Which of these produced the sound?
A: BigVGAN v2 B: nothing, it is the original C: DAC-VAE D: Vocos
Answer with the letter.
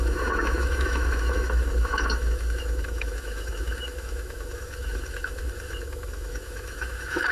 C